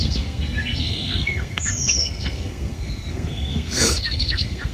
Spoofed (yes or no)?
yes